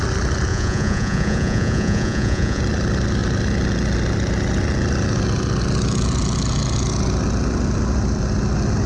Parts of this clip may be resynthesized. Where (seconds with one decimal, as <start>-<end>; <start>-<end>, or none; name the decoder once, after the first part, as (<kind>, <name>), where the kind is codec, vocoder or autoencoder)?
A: 0.5-2.6 (vocoder, Vocos)